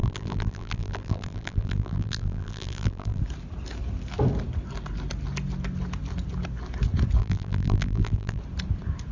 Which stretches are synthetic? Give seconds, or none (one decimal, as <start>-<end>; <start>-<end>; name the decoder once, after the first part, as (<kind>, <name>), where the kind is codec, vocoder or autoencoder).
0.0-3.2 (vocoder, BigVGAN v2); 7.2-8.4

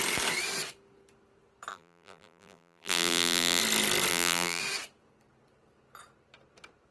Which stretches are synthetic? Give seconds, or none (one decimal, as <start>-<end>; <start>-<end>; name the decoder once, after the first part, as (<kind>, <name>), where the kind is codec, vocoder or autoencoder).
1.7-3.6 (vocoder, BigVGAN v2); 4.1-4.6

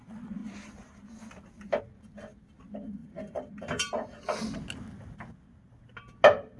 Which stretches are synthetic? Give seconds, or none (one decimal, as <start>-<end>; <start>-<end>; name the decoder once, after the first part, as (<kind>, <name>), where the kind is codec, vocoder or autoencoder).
0.4-1.8 (vocoder, BigVGAN v2); 3.0-4.4